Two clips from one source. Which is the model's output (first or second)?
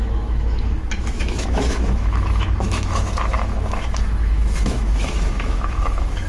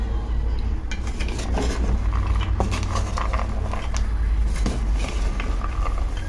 first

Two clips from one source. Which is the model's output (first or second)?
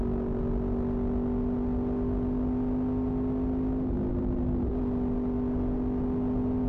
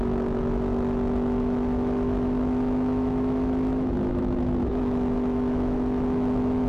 second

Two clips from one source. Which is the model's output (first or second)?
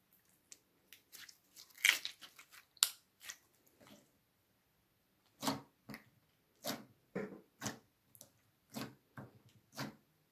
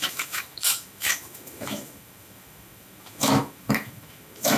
second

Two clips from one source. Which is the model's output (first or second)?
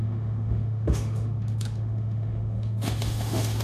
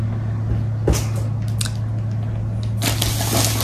first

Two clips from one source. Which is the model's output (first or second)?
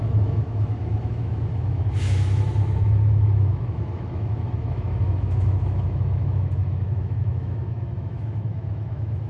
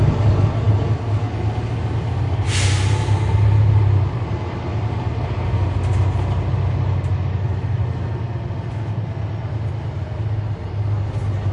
first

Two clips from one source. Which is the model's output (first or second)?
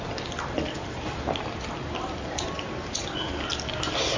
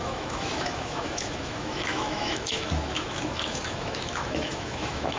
second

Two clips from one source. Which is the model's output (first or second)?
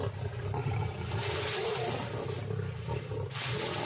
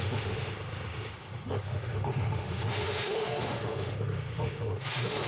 second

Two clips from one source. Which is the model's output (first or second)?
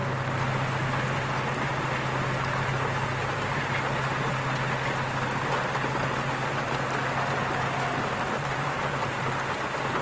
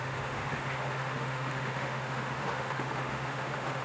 second